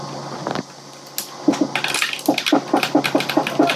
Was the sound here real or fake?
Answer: real